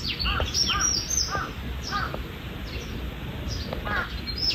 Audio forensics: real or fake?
real